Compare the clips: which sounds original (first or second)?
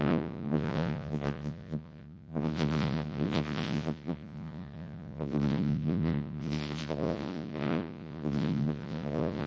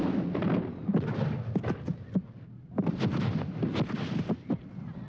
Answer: second